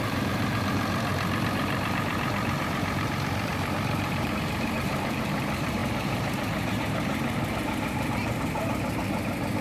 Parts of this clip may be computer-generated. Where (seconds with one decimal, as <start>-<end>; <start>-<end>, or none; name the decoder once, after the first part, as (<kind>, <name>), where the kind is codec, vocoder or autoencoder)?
0.0-1.1 (vocoder, BigVGAN v2); 1.9-9.6